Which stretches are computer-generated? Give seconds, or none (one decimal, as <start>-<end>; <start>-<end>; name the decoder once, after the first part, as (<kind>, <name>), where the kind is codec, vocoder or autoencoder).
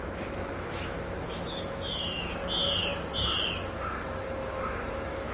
0.0-2.4 (autoencoder, DAC-VAE); 3.7-5.3